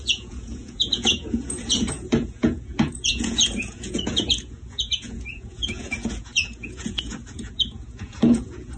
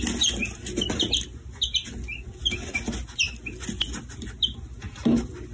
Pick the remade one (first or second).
first